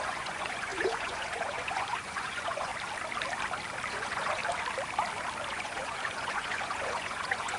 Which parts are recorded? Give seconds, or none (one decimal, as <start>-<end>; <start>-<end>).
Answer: 2.7-3.9; 4.4-5.5